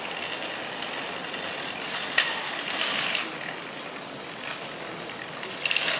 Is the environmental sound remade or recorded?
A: recorded